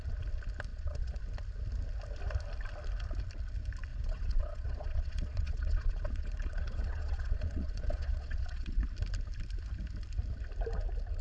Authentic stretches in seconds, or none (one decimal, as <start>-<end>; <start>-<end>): 0.0-0.7; 1.2-3.9; 8.8-11.2